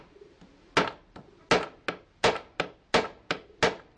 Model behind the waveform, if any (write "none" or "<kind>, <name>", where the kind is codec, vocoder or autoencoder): none